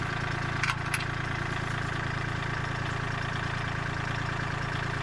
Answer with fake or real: fake